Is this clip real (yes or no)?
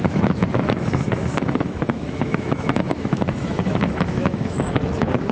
no